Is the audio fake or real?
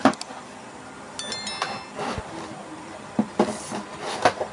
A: real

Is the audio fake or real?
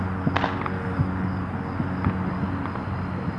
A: real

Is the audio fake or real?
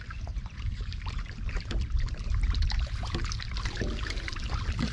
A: fake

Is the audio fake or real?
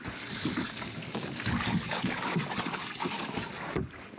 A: fake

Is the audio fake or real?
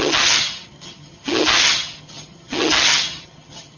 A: fake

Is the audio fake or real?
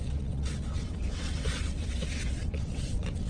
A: fake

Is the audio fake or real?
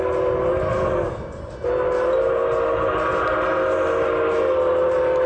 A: real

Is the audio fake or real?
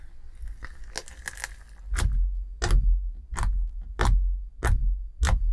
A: real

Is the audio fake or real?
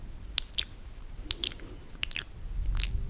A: real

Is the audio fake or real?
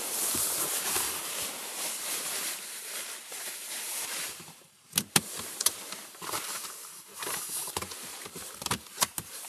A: fake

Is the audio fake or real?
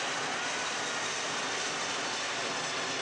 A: real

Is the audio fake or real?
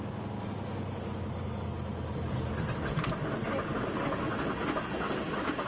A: real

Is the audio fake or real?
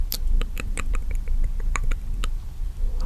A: fake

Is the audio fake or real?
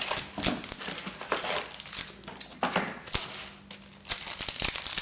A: real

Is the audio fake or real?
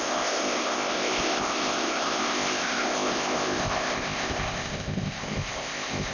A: fake